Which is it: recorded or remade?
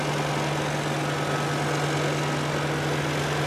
recorded